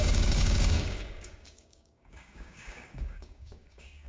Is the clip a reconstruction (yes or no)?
yes